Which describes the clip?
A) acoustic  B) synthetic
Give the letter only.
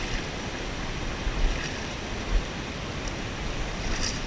A